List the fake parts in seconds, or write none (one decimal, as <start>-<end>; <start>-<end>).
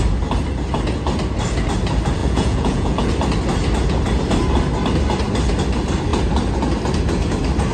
2.2-3.1